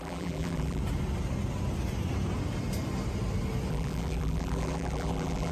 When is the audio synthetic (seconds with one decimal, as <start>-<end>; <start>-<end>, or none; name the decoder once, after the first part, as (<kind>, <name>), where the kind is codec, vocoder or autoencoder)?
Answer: 0.0-0.8 (vocoder, BigVGAN v2); 3.7-5.5